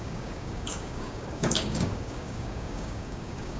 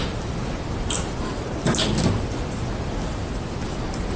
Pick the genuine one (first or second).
second